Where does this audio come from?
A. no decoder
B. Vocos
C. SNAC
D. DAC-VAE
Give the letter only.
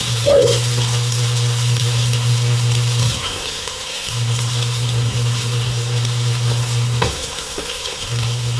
C